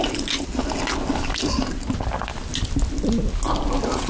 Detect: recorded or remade recorded